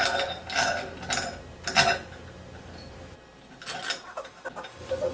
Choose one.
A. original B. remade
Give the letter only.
A